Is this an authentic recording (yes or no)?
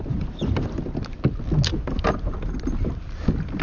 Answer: yes